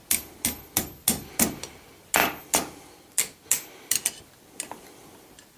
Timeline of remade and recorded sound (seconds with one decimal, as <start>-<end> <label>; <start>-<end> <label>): 0.0-5.6 recorded